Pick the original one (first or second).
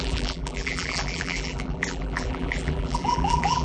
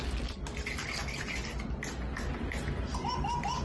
second